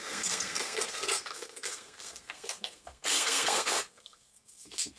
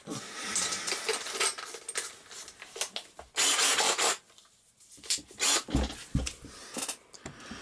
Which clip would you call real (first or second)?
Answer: second